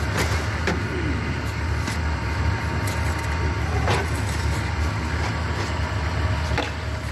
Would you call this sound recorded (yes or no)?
yes